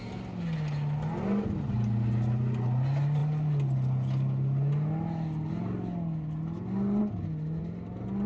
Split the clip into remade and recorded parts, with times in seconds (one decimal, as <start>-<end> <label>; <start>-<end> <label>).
0.0-8.3 recorded